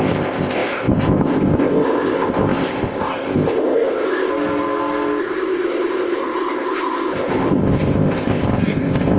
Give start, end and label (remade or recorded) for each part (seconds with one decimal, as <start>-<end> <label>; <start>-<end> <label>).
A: 0.0-4.3 remade; 4.3-5.2 recorded; 5.2-9.2 remade